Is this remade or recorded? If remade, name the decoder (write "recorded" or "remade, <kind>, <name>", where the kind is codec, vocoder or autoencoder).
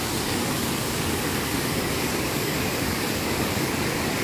remade, codec, DAC